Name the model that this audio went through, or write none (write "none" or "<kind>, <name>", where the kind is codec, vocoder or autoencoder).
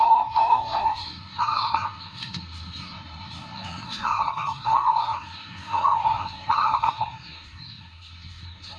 codec, SNAC